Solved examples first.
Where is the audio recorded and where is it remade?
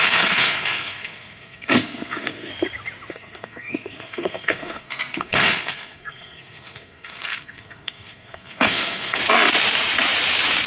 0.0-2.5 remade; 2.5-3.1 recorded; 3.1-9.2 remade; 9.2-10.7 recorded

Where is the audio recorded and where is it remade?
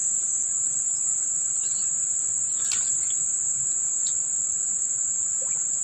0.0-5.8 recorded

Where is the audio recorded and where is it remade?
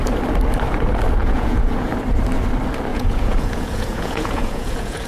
0.0-1.2 recorded; 1.2-1.9 remade; 1.9-2.9 recorded; 2.9-5.1 remade